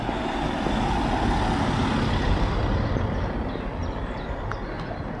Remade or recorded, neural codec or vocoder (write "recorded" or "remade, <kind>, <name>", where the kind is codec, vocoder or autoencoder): recorded